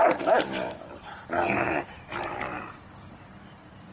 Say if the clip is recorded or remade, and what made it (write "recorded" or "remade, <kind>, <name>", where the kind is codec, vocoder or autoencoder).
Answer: remade, vocoder, BigVGAN v2